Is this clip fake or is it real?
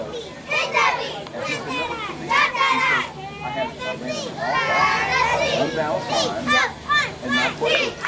real